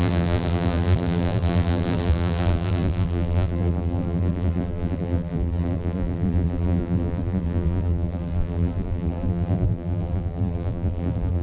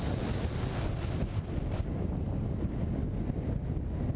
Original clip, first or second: second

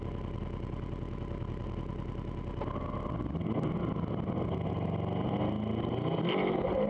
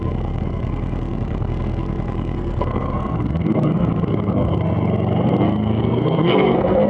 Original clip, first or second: first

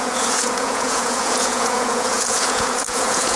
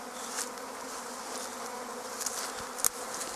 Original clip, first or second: second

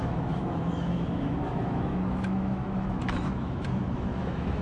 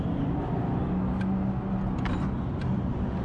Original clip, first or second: second